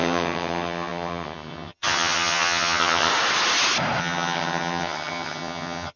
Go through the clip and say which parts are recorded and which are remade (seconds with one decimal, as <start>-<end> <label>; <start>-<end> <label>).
0.0-3.1 remade; 3.1-4.0 recorded; 4.0-6.0 remade